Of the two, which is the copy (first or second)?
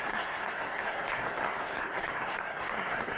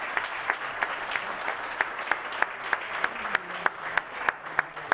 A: first